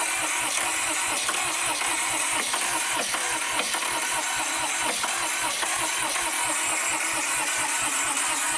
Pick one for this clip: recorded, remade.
recorded